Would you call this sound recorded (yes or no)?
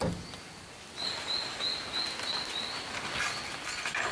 yes